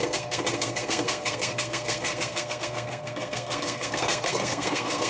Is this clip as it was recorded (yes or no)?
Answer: no